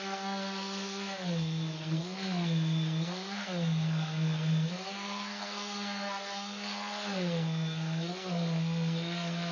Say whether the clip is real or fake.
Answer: fake